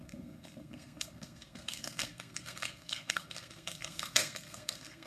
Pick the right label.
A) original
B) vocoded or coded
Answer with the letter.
B